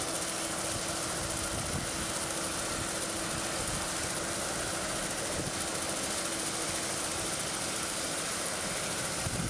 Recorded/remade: recorded